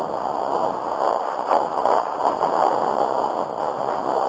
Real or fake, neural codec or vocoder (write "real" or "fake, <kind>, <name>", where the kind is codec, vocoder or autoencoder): fake, vocoder, Vocos